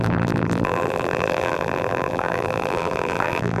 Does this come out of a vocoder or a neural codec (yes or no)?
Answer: yes